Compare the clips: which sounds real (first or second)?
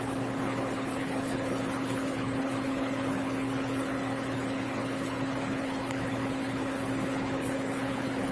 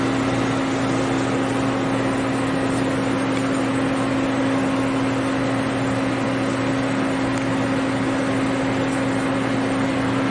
second